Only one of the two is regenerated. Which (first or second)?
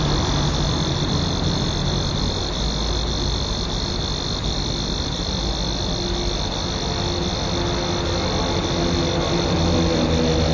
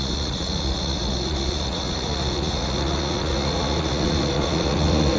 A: second